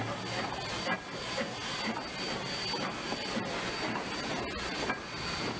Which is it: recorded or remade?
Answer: recorded